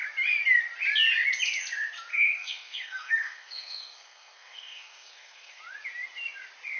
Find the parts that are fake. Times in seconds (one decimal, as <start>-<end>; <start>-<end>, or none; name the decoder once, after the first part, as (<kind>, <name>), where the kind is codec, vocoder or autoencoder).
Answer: 2.1-5.6 (codec, SNAC)